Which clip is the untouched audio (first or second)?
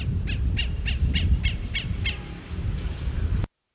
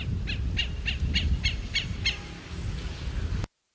second